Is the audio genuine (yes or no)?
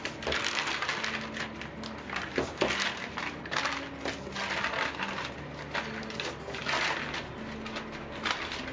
yes